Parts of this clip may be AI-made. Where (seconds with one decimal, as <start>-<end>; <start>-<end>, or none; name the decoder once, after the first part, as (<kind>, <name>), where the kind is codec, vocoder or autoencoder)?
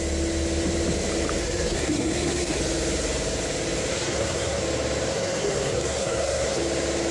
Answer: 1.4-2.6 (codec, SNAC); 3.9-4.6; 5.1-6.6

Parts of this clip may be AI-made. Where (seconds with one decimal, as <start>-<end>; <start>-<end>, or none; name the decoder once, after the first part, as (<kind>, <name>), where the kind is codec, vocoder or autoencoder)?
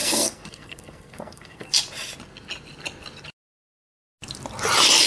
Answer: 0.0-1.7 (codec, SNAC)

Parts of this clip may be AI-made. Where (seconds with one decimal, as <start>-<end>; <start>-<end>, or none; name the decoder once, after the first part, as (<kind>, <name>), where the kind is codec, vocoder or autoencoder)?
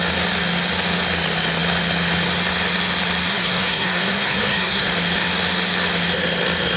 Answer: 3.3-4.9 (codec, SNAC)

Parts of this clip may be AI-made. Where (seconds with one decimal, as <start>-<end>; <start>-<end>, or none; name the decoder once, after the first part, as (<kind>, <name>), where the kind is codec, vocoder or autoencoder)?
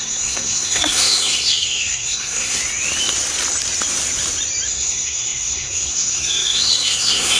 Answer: 0.0-2.6 (codec, SNAC); 4.7-7.4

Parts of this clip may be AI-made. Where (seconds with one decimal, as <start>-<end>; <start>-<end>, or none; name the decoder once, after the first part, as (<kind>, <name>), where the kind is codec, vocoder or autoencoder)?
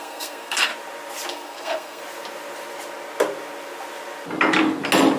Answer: 0.0-0.7 (codec, SNAC); 1.3-2.0